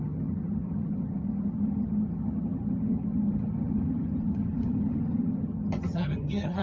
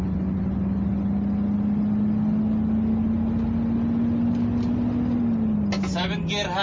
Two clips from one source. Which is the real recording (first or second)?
second